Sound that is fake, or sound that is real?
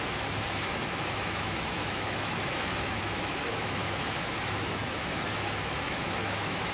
fake